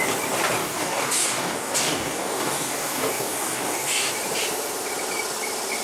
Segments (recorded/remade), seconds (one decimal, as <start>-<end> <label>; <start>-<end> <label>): 0.0-0.6 recorded; 0.6-4.1 remade; 4.1-5.8 recorded